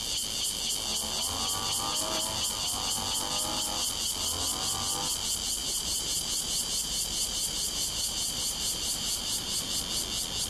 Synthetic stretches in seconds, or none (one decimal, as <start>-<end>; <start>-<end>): 5.6-9.7